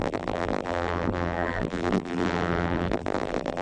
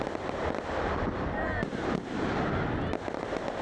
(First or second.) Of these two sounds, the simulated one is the first